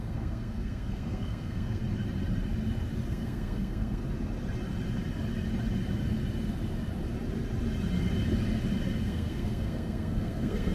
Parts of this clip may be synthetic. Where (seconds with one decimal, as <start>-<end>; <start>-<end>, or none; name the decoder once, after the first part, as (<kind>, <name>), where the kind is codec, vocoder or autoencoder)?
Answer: 0.0-1.8 (codec, SNAC); 3.1-4.0; 9.0-10.7